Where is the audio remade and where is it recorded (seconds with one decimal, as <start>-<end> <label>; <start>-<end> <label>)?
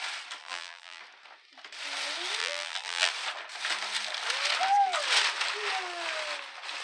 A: 0.0-0.4 recorded; 0.4-1.0 remade; 1.0-2.4 recorded; 2.4-3.1 remade; 3.1-6.8 recorded